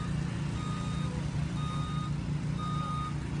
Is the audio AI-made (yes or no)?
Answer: no